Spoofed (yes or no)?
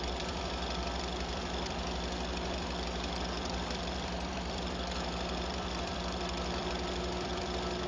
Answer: yes